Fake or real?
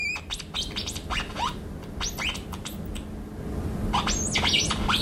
real